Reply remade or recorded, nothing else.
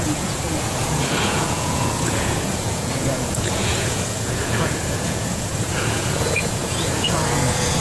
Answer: remade